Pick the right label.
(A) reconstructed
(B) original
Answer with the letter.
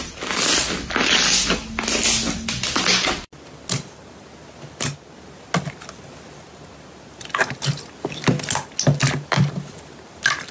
B